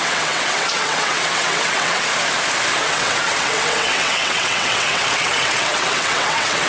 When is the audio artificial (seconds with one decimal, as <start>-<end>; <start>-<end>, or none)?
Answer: 0.0-2.1; 2.8-6.7